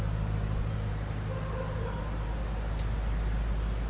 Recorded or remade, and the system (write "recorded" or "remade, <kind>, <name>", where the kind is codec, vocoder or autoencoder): recorded